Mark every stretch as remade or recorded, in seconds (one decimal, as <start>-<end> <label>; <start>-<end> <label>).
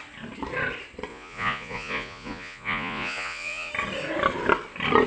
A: 0.0-1.1 recorded; 1.1-3.7 remade; 3.7-5.1 recorded